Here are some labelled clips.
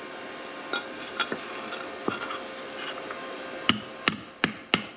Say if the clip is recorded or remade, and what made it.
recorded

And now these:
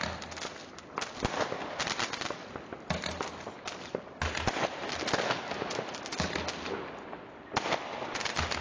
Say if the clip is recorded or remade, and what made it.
recorded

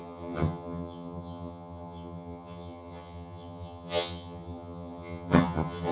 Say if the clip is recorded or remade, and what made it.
remade, vocoder, HiFi-GAN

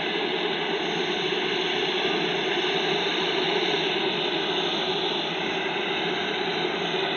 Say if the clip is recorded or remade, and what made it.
recorded